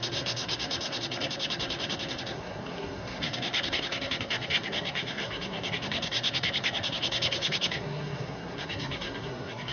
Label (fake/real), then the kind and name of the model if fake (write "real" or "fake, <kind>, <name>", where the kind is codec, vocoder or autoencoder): fake, codec, SNAC